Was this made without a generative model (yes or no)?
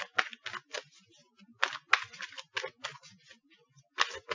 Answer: yes